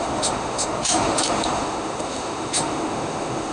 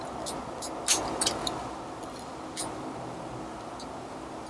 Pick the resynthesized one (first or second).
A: first